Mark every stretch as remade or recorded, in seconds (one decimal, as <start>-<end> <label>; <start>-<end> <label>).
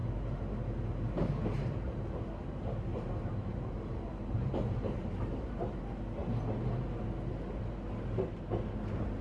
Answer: 0.0-2.9 recorded; 2.9-5.8 remade; 5.8-9.2 recorded